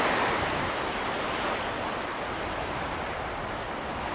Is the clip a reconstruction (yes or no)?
no